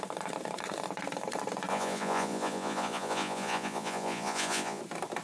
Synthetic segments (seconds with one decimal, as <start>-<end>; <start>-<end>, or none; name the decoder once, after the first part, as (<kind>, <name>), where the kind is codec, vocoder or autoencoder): 1.7-4.8 (vocoder, Vocos)